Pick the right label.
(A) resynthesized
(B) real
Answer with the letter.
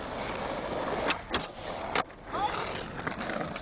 B